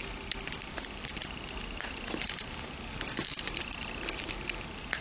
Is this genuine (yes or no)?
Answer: yes